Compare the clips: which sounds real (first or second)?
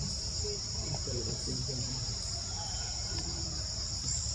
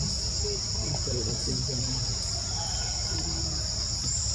second